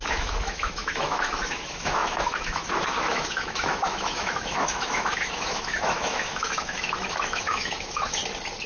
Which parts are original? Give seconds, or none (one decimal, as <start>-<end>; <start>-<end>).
8.2-8.7